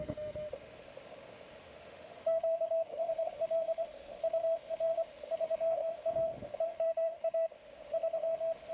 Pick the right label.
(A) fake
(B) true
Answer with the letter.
A